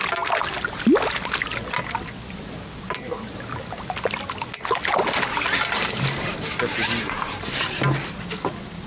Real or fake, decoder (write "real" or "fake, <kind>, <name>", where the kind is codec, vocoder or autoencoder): real